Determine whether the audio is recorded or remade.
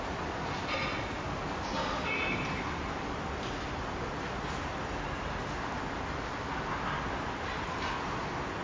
recorded